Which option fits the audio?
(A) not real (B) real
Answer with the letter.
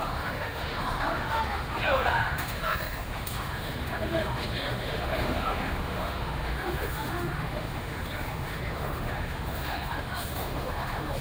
A